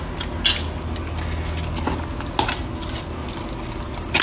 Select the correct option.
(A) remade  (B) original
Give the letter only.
B